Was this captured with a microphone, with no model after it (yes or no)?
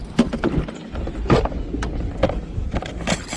yes